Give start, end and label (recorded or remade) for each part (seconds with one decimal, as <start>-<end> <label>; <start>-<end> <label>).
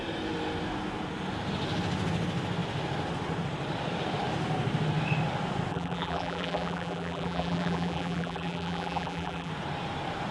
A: 0.0-5.7 recorded; 5.7-9.5 remade; 9.5-10.3 recorded